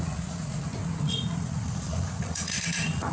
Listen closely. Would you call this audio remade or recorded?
remade